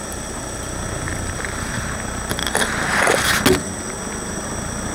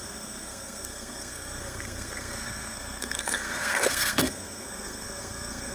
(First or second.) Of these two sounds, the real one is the first